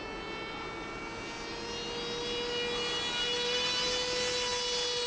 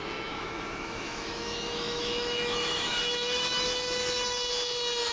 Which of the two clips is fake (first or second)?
second